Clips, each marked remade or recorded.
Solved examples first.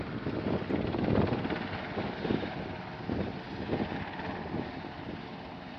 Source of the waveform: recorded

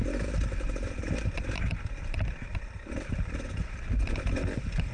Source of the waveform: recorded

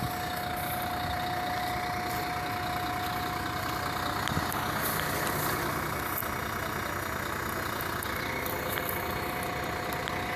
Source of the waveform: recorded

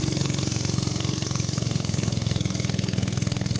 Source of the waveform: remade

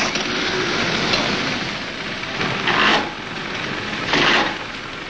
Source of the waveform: remade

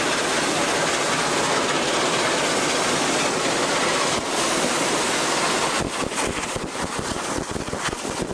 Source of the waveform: recorded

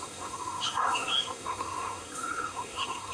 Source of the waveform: remade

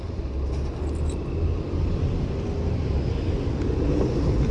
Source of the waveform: recorded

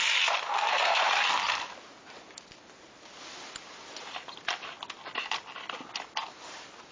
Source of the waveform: recorded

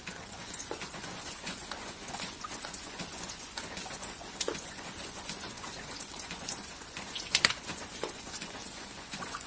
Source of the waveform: remade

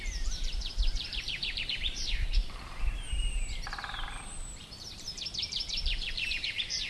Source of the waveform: remade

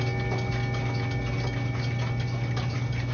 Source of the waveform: recorded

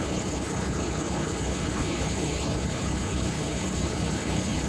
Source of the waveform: remade